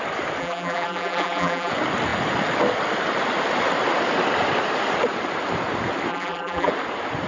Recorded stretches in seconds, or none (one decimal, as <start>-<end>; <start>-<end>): 0.0-0.4; 1.7-6.1; 6.7-7.3